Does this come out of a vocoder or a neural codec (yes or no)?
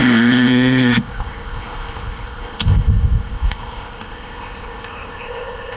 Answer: yes